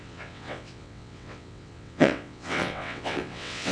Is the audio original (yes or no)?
no